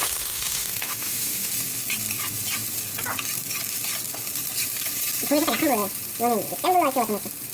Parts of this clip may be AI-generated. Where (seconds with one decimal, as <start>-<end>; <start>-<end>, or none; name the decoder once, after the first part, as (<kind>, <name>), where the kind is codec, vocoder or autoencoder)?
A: 0.0-1.5 (autoencoder, DAC-VAE)